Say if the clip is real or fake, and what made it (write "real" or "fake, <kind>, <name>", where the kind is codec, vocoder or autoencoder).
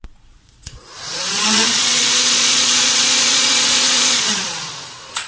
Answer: fake, vocoder, Vocos